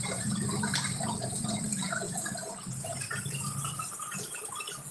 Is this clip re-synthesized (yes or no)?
no